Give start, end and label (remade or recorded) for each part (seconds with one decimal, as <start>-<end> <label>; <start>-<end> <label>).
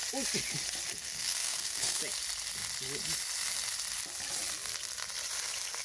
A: 0.0-1.0 recorded; 1.0-2.0 remade; 2.0-5.8 recorded